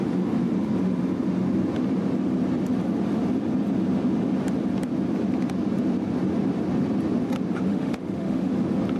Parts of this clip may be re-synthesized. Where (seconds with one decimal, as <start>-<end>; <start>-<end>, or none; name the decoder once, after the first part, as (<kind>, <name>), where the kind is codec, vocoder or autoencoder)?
7.7-8.5 (autoencoder, DAC-VAE)